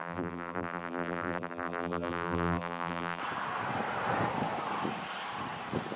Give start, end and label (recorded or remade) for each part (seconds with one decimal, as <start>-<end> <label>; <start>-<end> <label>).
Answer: 0.0-3.2 remade; 3.2-6.0 recorded